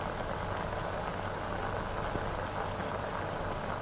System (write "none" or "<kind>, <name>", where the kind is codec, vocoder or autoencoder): none